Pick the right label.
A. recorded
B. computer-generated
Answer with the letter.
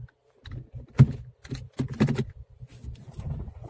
A